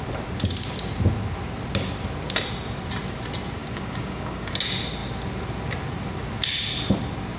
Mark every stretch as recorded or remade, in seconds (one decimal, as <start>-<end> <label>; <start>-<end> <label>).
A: 0.0-3.6 recorded; 3.6-4.5 remade; 4.5-7.4 recorded